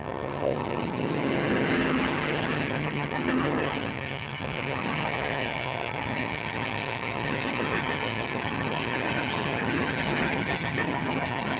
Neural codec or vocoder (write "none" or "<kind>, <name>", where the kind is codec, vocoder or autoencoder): vocoder, HiFi-GAN